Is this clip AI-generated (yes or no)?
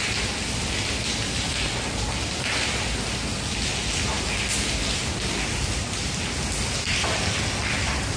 no